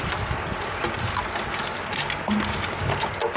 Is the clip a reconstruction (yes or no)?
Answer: no